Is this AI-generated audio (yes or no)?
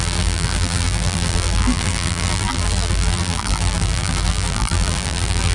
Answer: yes